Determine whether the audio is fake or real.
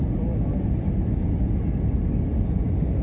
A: real